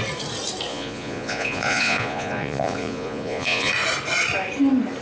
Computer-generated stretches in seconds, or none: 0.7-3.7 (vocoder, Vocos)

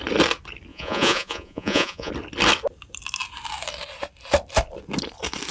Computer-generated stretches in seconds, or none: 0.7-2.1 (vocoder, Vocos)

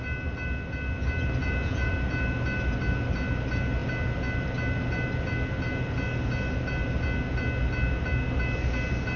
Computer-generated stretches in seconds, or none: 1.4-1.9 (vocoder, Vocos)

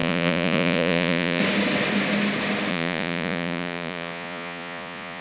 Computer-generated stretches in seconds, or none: 0.0-1.4 (vocoder, Vocos); 2.7-5.2